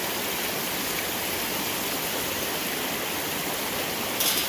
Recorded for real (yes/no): yes